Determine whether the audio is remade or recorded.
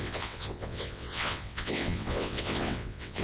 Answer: remade